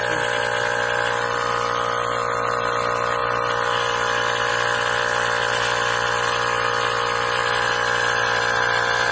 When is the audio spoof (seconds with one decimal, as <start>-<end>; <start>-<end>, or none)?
none